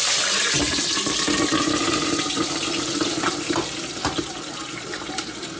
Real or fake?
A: real